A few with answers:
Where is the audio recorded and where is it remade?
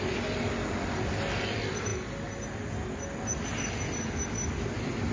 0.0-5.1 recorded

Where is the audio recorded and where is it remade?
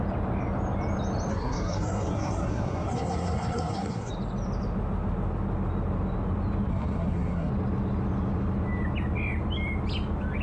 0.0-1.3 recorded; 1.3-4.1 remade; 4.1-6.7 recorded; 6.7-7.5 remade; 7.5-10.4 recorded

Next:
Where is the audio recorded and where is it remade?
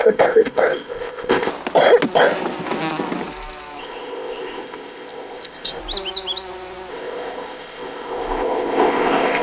0.0-1.5 remade; 1.5-3.8 recorded; 3.8-5.8 remade; 5.8-6.9 recorded; 6.9-9.4 remade